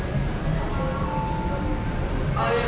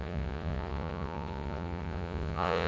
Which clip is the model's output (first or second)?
second